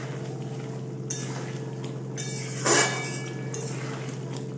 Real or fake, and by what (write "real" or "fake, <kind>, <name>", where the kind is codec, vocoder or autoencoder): real